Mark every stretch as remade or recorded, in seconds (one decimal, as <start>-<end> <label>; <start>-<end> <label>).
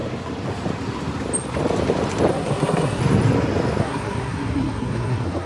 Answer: 0.0-2.3 recorded; 2.3-3.0 remade; 3.0-3.8 recorded; 3.8-5.5 remade